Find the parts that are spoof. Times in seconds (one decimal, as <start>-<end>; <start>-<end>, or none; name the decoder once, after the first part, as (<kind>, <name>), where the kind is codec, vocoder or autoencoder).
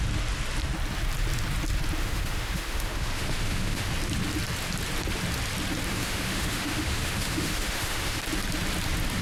2.0-3.9 (autoencoder, DAC-VAE); 5.9-8.2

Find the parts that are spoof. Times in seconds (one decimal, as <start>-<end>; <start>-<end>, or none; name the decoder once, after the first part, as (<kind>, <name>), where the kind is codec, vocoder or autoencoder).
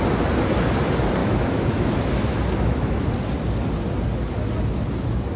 1.2-3.1 (autoencoder, DAC-VAE)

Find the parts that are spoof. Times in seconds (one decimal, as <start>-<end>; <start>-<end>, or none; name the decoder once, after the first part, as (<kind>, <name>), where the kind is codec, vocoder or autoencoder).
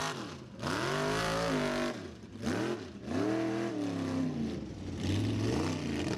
none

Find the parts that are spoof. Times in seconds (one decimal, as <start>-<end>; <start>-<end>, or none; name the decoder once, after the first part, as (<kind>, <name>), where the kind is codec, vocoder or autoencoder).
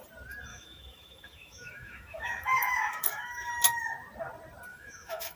0.5-3.5 (autoencoder, DAC-VAE); 4.7-5.4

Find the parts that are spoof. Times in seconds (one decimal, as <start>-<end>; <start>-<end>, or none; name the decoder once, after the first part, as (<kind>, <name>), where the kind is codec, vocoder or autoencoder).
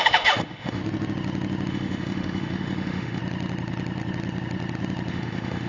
0.0-0.8 (autoencoder, DAC-VAE); 1.7-3.2; 5.1-5.7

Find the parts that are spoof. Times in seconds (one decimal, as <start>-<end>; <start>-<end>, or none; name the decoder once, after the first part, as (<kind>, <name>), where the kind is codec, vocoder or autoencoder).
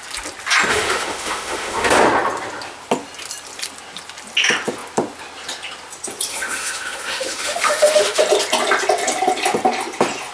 0.7-1.9 (autoencoder, DAC-VAE); 6.3-8.2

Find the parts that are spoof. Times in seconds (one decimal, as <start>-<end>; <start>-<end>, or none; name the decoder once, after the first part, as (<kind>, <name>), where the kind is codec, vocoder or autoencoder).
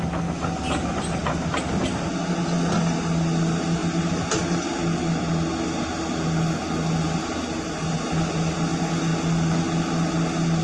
none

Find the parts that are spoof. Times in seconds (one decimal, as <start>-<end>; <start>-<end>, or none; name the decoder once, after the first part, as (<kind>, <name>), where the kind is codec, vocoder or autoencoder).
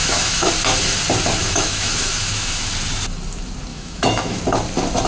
0.0-0.5 (autoencoder, DAC-VAE); 1.4-2.7; 3.7-4.4